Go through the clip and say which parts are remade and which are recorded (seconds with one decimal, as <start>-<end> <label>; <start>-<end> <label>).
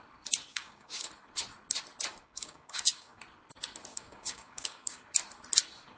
0.0-0.5 recorded; 0.5-1.1 remade; 1.1-2.2 recorded; 2.2-3.2 remade; 3.2-3.9 recorded; 3.9-5.0 remade; 5.0-6.0 recorded